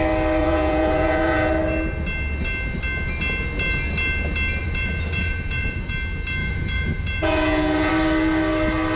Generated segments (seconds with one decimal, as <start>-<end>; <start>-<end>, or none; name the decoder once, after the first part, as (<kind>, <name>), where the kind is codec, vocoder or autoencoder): 0.4-1.5 (vocoder, Vocos); 4.6-5.9; 6.4-7.9